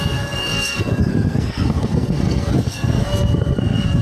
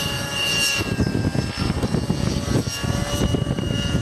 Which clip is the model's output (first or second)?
first